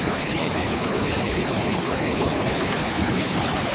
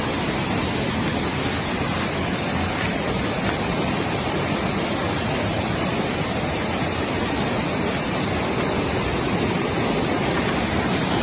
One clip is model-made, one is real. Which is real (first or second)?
second